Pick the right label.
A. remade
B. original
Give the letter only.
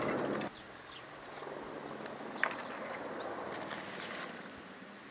B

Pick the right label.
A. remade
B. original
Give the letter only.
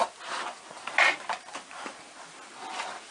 B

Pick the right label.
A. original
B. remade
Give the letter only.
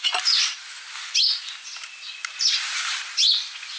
A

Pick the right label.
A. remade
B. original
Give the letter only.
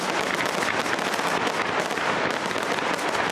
B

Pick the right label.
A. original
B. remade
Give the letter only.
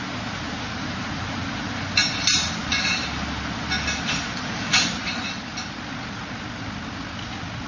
A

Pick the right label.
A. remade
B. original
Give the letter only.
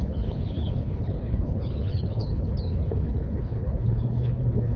A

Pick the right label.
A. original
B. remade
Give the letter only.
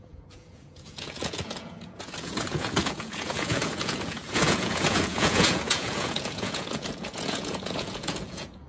B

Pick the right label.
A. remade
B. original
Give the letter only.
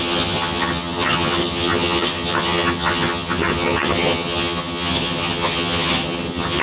A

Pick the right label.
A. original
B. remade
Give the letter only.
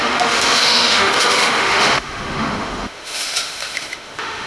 B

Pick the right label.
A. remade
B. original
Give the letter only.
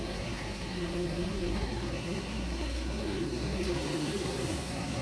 A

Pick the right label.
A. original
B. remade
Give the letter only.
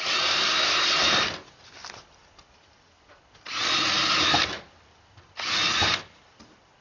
A